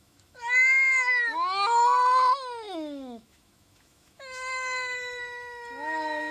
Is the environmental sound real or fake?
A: fake